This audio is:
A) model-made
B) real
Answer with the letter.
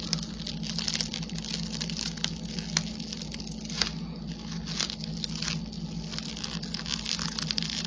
B